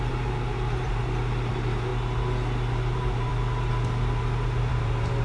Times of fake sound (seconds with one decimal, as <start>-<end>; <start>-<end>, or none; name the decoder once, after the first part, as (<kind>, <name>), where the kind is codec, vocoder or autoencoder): 0.0-1.0 (vocoder, BigVGAN v2); 1.5-1.9; 2.7-3.3; 4.7-5.2